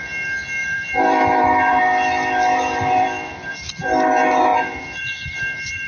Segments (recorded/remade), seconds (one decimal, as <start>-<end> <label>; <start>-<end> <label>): 0.0-0.6 recorded; 0.6-4.1 remade; 4.1-4.5 recorded; 4.5-5.9 remade